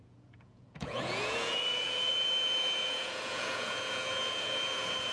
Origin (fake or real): fake